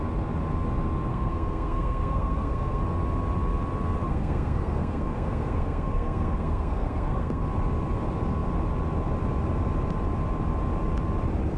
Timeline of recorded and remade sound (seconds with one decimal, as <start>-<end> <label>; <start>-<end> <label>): 0.0-1.1 recorded; 1.1-2.8 remade; 2.8-4.1 recorded; 4.1-7.4 remade; 7.4-11.6 recorded